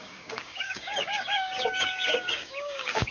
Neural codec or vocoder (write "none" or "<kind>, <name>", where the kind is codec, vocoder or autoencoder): codec, DAC